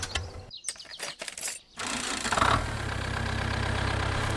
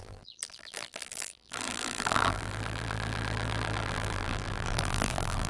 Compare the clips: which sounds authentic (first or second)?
first